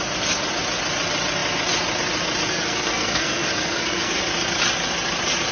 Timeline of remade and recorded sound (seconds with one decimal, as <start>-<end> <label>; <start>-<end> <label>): 0.0-2.5 recorded; 2.5-4.2 remade; 4.2-5.5 recorded

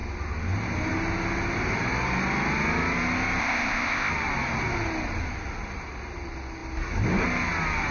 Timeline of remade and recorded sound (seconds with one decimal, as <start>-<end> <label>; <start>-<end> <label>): 0.0-3.4 recorded; 3.4-4.1 remade; 4.1-7.9 recorded